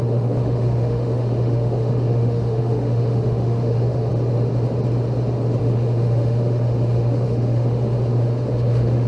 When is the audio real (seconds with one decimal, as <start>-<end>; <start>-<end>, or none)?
4.1-5.6